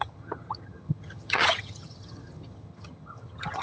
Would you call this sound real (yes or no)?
no